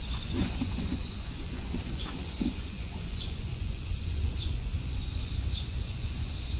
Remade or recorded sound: remade